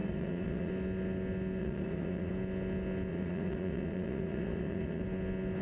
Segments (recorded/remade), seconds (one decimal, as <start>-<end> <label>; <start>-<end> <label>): 0.0-0.7 remade; 0.7-1.6 recorded; 1.6-2.3 remade; 2.3-3.1 recorded; 3.1-5.0 remade; 5.0-5.6 recorded